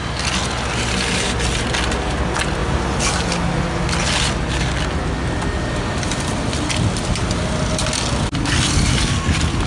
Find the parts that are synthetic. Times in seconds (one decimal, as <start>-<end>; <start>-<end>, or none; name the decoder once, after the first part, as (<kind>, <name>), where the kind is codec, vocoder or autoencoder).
none